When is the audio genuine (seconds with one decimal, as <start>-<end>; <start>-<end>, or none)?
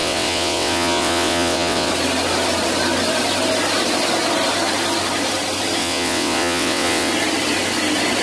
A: 1.9-5.8; 7.1-8.2